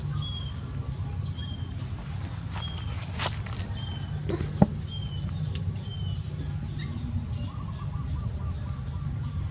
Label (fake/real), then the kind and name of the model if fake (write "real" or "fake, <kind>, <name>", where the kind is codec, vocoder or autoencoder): real